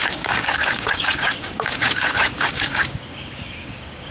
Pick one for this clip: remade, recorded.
remade